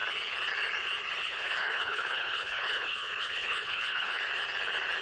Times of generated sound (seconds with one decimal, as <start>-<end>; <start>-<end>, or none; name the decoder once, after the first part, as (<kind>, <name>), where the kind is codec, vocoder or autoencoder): 1.2-4.2 (codec, HILCodec)